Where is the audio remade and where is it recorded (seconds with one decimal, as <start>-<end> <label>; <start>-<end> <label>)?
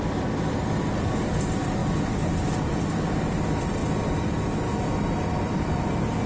0.0-3.8 remade; 3.8-5.4 recorded; 5.4-6.3 remade